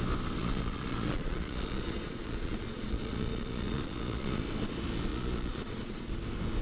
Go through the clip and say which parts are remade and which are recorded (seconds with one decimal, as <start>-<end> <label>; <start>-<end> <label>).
0.0-0.4 recorded; 0.4-4.4 remade; 4.4-5.1 recorded; 5.1-6.1 remade; 6.1-6.6 recorded